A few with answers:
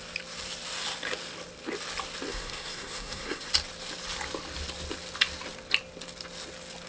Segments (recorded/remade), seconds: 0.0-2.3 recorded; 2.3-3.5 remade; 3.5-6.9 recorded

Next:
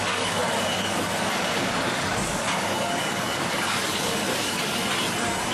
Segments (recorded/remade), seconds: 0.0-4.7 remade; 4.7-5.5 recorded

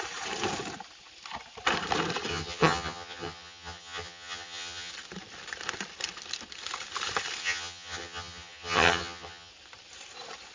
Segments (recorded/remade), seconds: 0.0-2.3 recorded; 2.3-4.9 remade; 4.9-7.4 recorded; 7.4-9.5 remade; 9.5-10.5 recorded